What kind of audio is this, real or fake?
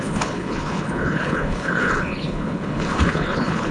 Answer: fake